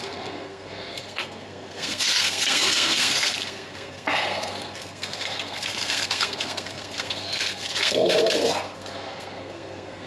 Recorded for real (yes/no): no